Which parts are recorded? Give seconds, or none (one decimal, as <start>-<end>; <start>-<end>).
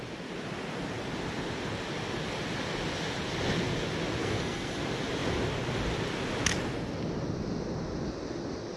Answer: 0.0-4.2; 4.8-8.8